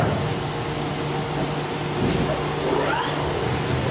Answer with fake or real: real